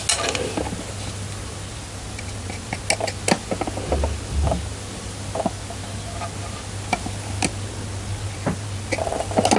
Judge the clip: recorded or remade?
recorded